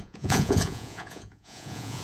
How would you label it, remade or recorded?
remade